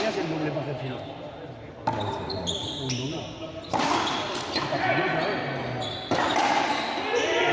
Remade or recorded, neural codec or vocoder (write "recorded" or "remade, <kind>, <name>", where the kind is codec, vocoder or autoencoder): recorded